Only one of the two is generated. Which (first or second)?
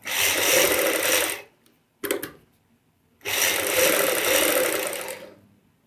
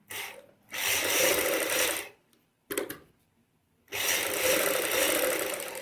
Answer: second